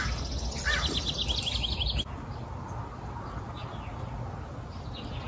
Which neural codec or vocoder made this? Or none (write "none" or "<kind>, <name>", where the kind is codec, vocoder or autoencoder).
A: none